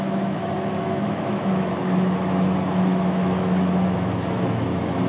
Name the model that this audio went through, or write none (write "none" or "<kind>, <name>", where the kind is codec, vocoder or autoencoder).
autoencoder, DAC-VAE